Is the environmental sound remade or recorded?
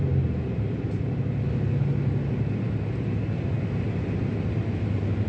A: recorded